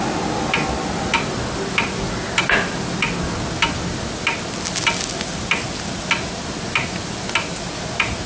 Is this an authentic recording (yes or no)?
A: yes